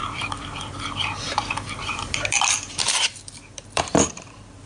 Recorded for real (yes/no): no